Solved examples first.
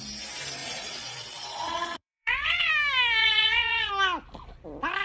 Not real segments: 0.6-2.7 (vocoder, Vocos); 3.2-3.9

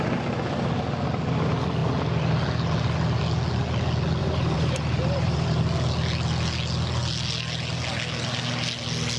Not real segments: 4.2-5.6 (vocoder, BigVGAN v2)

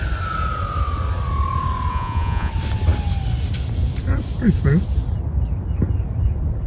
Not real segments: 1.9-2.5 (vocoder, Vocos)

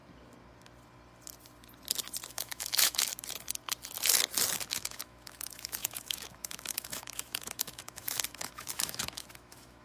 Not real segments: 2.3-3.1 (autoencoder, DAC-VAE); 4.7-9.8